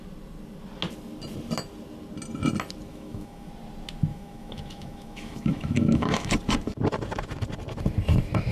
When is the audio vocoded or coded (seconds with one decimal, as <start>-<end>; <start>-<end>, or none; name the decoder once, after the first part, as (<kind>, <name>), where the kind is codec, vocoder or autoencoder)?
2.9-3.5 (autoencoder, DAC-VAE); 4.1-6.3